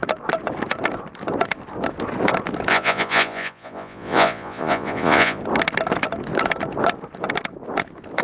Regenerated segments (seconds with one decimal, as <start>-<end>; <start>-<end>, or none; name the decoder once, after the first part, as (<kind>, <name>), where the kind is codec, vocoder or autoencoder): 2.7-5.4 (vocoder, Vocos)